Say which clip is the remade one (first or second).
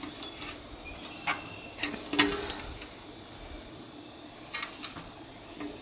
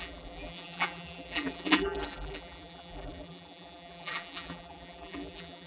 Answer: second